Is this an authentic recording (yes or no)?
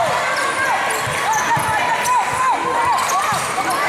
yes